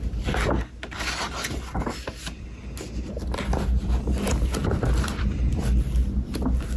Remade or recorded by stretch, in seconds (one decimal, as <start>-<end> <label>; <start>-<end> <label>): 0.0-4.6 recorded; 4.6-5.6 remade; 5.6-6.8 recorded